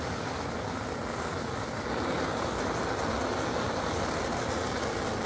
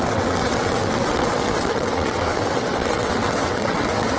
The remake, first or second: second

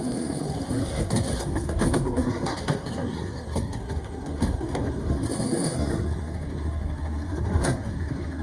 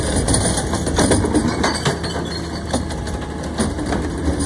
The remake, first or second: first